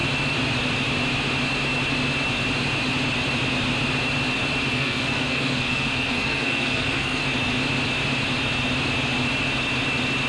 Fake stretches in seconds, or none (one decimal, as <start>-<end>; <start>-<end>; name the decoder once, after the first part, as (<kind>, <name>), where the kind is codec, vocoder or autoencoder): 4.7-7.2 (codec, SNAC)